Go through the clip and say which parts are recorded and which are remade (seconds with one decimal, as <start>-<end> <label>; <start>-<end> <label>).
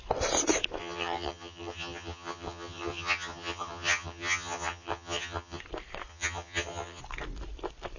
0.0-0.8 recorded; 0.8-5.6 remade; 5.6-6.1 recorded; 6.1-7.0 remade; 7.0-8.0 recorded